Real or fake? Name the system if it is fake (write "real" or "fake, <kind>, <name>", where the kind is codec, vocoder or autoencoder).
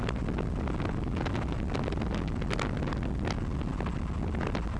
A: real